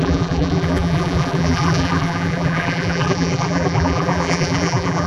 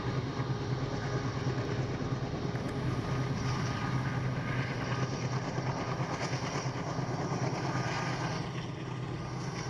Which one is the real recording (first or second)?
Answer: second